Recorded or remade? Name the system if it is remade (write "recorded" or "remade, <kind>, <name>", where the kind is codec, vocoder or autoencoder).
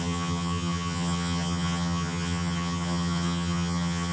remade, vocoder, HiFi-GAN